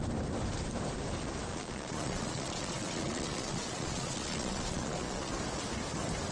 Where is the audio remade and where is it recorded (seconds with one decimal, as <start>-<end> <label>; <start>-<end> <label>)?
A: 0.0-1.5 recorded; 1.5-5.3 remade; 5.3-6.3 recorded